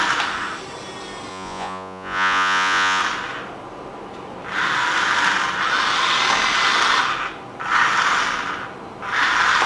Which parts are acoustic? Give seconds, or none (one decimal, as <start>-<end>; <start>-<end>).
0.0-1.3; 3.0-9.7